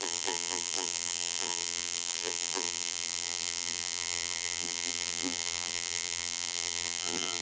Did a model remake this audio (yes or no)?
yes